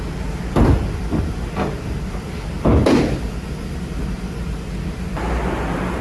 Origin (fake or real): real